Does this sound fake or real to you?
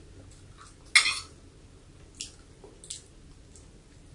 real